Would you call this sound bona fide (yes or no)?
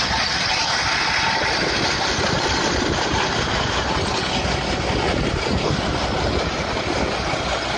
yes